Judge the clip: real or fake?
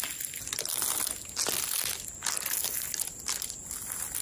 real